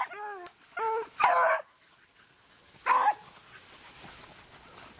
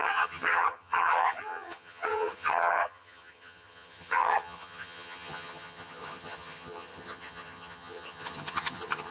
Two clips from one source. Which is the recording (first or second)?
first